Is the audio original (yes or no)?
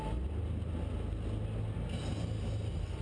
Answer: yes